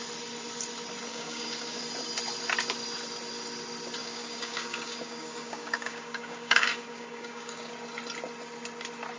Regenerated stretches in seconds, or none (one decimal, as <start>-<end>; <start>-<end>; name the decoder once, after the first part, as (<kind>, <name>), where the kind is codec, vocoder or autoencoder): 1.1-1.8 (codec, DAC); 4.0-7.7